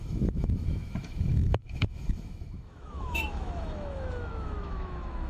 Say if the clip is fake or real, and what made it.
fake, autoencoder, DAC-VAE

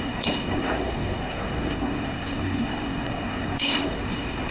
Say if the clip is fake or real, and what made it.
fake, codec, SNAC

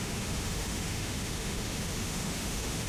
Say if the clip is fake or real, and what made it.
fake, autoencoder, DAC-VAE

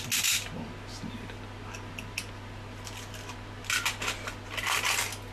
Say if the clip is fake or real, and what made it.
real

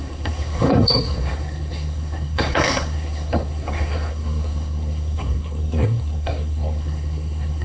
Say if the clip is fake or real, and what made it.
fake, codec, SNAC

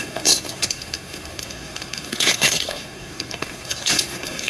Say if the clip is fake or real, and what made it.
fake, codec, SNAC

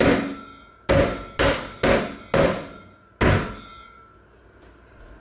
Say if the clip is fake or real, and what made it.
real